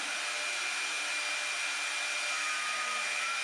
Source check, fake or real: real